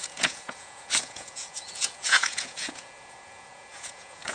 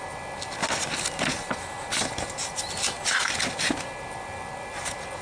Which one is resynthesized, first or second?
first